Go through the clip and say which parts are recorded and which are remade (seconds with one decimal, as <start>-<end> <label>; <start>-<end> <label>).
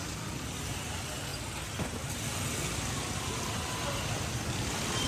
0.0-5.1 recorded